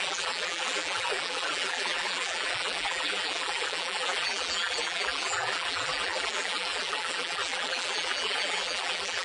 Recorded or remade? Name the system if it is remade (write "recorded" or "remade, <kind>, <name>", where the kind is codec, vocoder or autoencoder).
remade, vocoder, BigVGAN v2